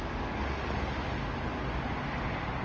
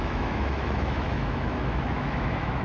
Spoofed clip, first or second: second